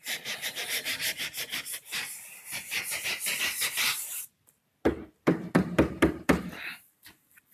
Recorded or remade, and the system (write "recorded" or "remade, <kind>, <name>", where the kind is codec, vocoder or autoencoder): remade, vocoder, BigVGAN v2